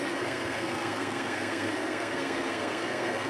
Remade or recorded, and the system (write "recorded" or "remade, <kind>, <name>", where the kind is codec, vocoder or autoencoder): remade, codec, SNAC